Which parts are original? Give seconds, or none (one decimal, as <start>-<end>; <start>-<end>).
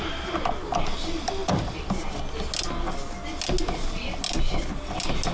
0.0-5.3